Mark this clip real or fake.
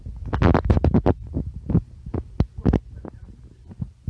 real